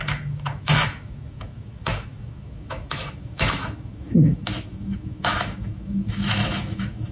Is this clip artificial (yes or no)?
yes